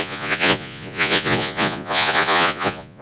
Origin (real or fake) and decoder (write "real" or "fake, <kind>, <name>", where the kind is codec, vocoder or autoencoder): fake, vocoder, Vocos